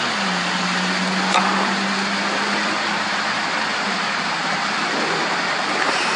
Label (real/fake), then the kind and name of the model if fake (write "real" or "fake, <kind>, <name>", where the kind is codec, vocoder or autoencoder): real